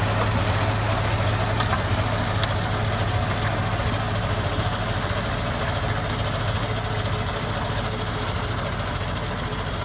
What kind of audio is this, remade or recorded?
recorded